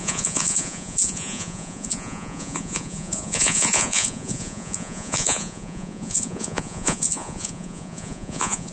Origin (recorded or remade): remade